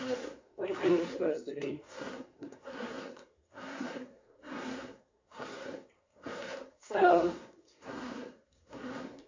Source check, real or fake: fake